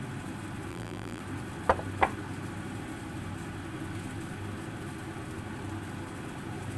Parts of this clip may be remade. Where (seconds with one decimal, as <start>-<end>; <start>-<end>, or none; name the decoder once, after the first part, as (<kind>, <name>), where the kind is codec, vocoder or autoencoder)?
0.7-1.2 (vocoder, BigVGAN v2)